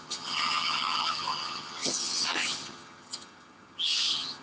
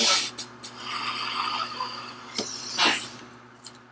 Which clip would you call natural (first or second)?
second